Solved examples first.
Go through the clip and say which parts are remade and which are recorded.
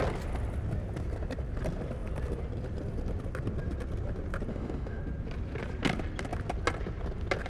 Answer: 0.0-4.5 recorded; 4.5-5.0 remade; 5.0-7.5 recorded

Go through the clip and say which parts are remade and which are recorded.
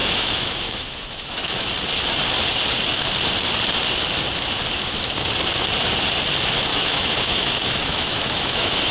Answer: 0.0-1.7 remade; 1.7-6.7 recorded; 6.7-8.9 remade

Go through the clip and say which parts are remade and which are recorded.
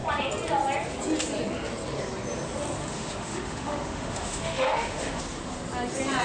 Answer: 0.0-2.8 recorded; 2.8-5.2 remade; 5.2-6.2 recorded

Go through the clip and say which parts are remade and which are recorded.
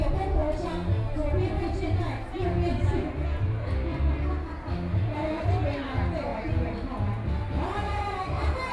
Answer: 0.0-8.7 recorded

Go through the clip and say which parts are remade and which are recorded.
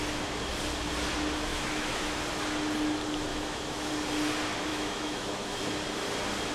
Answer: 0.0-1.5 recorded; 1.5-2.2 remade; 2.2-3.3 recorded; 3.3-3.9 remade; 3.9-4.7 recorded; 4.7-5.6 remade; 5.6-6.5 recorded